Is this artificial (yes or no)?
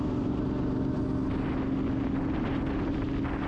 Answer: no